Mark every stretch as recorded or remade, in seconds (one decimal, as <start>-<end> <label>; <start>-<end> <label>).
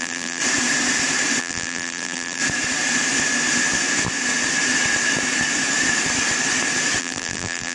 0.0-0.4 remade; 0.4-1.4 recorded; 1.4-2.4 remade; 2.4-7.0 recorded; 7.0-7.7 remade